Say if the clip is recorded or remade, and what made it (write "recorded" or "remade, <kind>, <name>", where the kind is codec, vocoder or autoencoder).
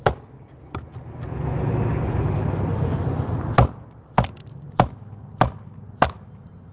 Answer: recorded